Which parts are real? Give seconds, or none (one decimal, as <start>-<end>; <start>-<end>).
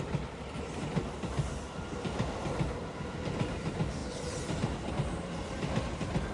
0.0-6.3